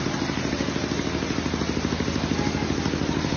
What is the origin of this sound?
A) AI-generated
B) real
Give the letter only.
B